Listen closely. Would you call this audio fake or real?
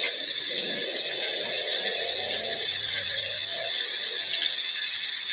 real